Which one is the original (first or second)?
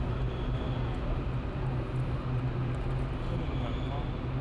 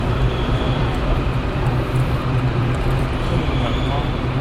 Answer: first